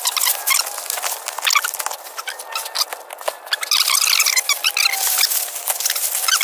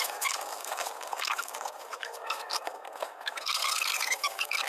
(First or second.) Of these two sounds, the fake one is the second